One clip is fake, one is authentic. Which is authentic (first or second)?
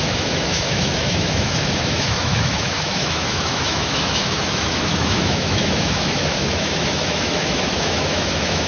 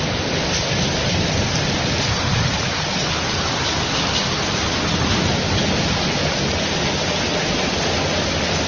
second